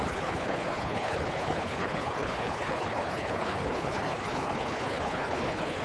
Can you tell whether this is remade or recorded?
remade